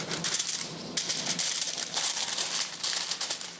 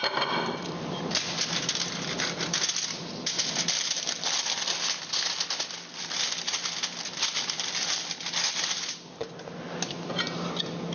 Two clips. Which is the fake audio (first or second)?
first